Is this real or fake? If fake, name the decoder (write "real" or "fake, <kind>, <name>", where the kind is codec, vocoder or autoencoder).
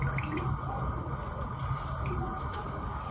real